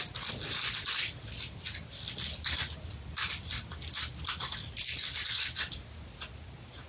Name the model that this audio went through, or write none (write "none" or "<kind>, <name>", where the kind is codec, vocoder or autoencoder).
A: none